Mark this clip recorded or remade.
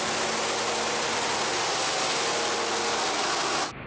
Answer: recorded